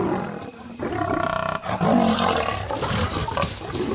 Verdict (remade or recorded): recorded